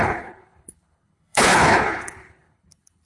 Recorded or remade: remade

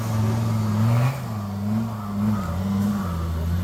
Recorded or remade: recorded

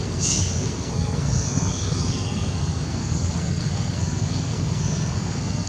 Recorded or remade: remade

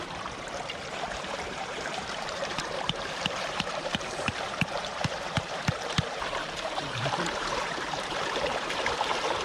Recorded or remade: remade